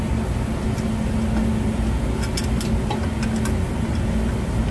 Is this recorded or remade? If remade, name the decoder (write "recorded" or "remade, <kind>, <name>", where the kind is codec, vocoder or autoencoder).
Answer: recorded